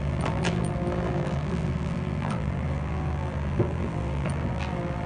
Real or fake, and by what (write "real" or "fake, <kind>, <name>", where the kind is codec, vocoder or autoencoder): fake, vocoder, BigVGAN v2